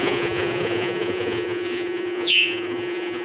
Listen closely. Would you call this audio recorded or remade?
remade